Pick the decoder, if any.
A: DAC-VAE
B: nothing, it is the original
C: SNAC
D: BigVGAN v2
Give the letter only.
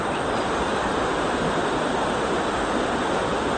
B